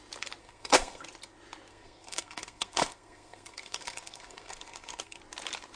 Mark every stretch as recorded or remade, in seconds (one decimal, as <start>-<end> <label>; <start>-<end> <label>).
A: 0.0-0.4 recorded; 0.4-1.0 remade; 1.0-1.7 recorded; 1.7-5.2 remade; 5.2-5.8 recorded